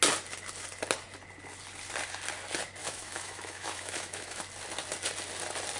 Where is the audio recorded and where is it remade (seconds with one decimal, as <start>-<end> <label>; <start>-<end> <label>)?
0.0-2.8 recorded; 2.8-4.4 remade; 4.4-5.8 recorded